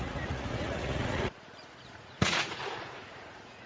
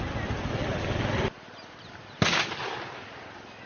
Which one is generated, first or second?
first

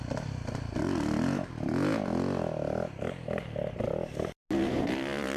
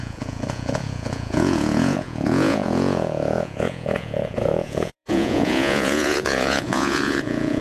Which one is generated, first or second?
second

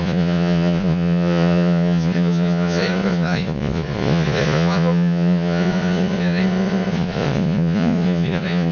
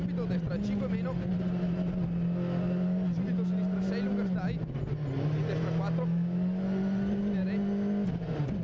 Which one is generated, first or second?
first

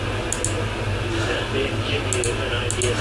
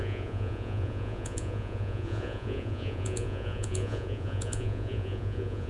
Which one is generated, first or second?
second